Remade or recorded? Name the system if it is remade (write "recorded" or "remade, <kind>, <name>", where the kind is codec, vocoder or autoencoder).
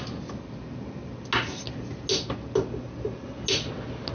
recorded